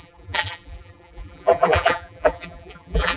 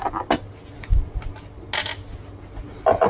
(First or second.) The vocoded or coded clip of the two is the first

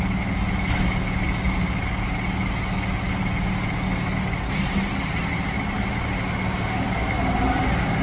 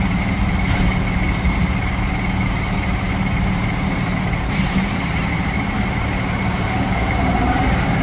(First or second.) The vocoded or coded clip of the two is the second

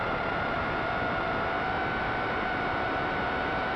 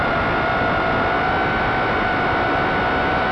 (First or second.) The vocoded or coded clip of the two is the first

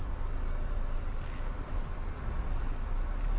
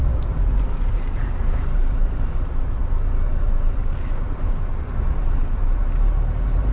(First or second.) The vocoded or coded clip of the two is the second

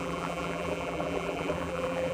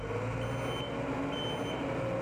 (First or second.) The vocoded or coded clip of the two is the first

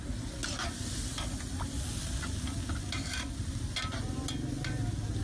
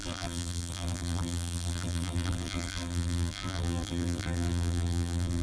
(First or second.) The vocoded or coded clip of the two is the second